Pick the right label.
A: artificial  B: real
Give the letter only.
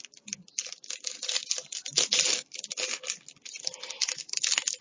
B